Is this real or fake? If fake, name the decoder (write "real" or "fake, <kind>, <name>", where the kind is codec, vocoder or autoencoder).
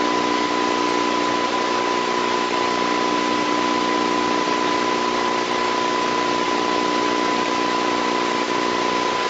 fake, vocoder, BigVGAN v2